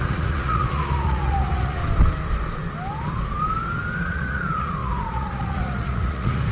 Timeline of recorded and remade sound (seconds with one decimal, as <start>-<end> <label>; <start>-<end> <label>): 0.0-1.8 remade; 1.8-4.0 recorded; 4.0-6.5 remade